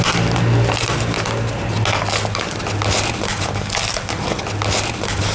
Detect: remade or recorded recorded